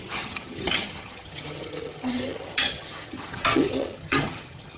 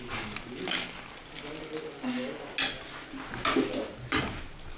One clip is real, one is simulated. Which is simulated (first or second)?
first